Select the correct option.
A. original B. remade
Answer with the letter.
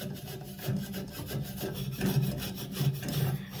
A